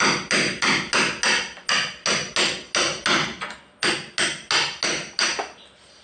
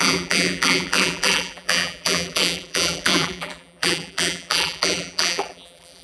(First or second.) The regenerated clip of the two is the second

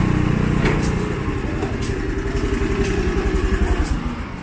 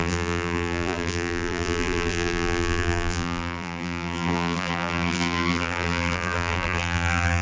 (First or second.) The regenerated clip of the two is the second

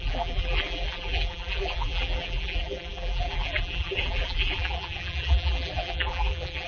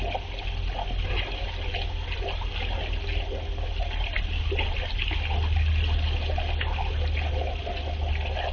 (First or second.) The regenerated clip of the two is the first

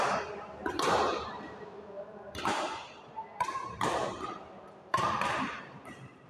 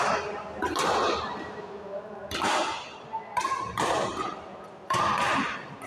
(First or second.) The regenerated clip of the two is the first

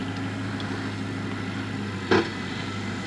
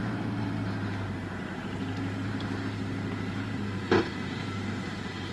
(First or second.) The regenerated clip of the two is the second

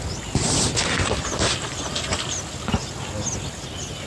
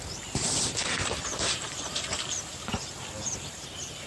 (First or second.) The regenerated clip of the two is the second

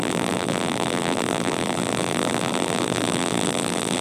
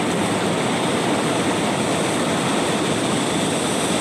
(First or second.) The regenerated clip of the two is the first